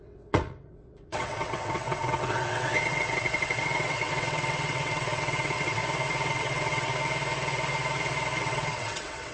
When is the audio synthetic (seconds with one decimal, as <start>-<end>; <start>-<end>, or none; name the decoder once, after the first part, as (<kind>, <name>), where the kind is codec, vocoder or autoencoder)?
0.0-5.8 (vocoder, WaveNeXt); 6.3-6.9; 8.4-9.3